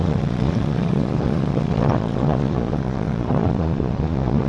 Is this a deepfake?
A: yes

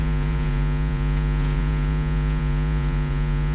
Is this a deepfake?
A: yes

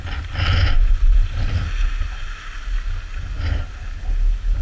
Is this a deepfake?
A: no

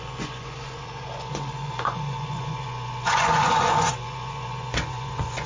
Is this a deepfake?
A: yes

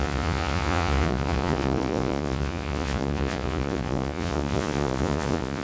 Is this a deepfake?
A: yes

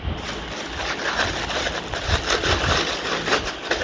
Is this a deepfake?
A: no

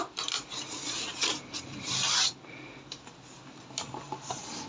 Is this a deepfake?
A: no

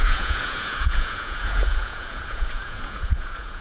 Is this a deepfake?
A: yes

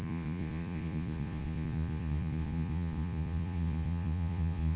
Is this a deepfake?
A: yes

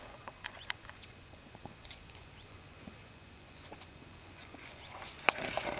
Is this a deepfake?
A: yes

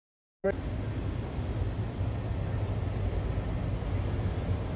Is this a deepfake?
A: no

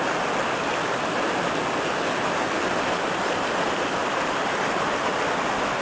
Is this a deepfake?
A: no